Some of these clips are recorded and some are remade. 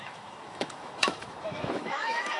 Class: remade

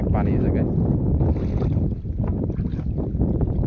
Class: recorded